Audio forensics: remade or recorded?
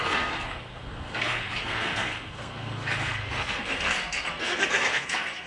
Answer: remade